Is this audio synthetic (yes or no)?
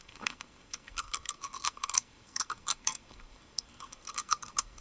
yes